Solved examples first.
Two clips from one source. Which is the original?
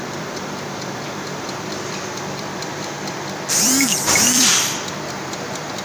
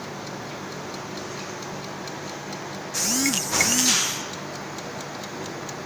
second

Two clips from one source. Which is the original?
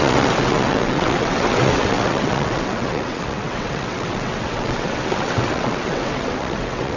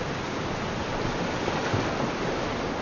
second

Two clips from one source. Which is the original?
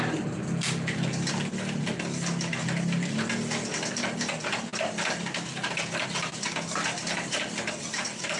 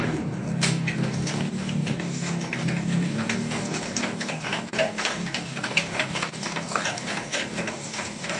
first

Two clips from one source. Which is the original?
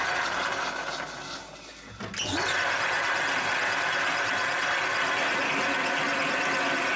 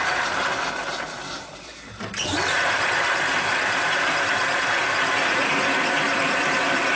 first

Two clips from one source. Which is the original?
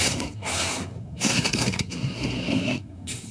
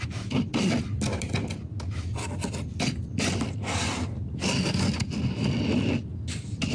second